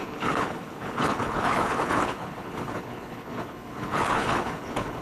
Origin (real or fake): fake